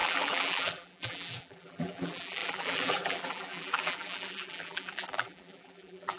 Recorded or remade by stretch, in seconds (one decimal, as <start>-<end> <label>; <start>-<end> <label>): 0.0-6.2 remade